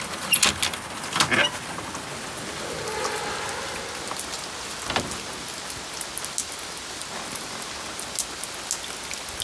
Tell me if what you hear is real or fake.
real